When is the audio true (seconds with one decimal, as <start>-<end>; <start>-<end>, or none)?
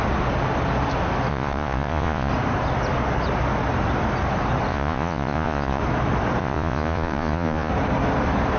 0.0-1.3; 2.3-4.7; 5.8-6.4; 7.7-8.6